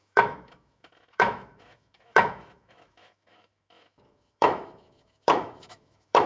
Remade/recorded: remade